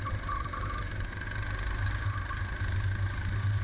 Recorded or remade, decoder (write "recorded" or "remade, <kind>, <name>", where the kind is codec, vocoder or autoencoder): recorded